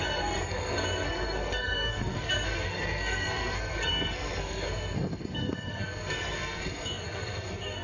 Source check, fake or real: fake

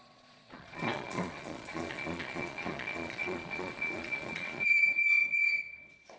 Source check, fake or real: fake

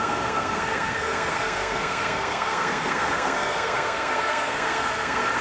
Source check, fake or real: fake